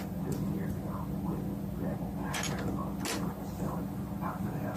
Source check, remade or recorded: recorded